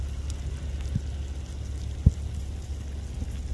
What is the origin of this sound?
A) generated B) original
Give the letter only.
B